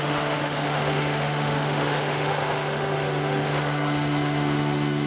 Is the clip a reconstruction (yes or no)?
yes